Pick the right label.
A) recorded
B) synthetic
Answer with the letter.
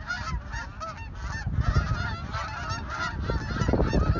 A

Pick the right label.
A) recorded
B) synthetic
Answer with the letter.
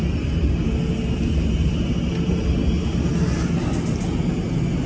A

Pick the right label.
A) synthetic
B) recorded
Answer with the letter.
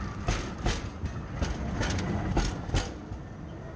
B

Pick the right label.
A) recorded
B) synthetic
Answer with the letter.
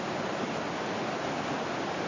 A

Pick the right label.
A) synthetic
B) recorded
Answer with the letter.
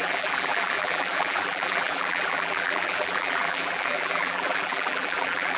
A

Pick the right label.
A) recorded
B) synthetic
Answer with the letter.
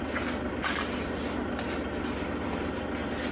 A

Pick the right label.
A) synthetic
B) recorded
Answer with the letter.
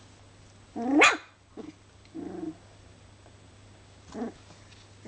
B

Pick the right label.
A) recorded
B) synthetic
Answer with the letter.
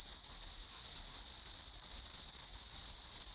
A